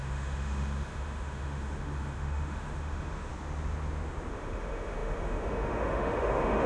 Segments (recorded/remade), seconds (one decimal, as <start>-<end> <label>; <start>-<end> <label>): 0.0-3.3 remade; 3.3-4.3 recorded; 4.3-6.7 remade